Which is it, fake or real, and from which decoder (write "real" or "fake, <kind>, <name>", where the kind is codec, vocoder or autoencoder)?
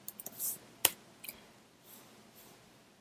real